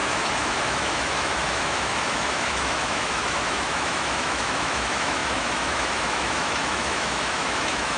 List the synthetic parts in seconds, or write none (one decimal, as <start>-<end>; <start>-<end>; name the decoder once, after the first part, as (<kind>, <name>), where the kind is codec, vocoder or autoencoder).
0.0-8.0 (autoencoder, DAC-VAE)